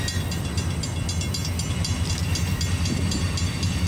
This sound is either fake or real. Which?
real